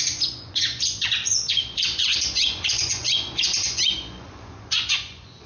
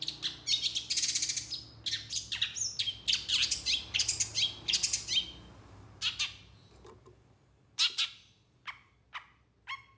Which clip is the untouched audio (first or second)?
second